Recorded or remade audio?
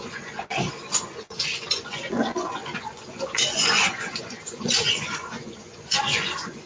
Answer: remade